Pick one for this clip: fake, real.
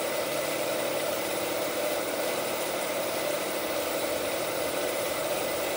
fake